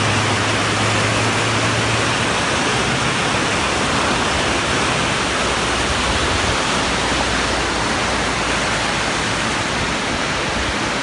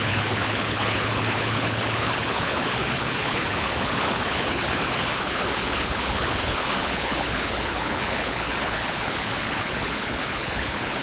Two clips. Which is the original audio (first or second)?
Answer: first